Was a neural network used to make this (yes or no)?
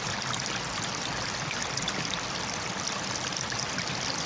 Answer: no